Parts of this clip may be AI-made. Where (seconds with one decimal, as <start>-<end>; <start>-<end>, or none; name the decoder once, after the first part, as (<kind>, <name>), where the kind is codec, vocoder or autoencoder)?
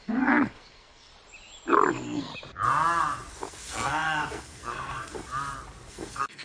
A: 0.0-1.1 (codec, SNAC); 1.9-2.3; 3.3-5.3; 5.9-6.4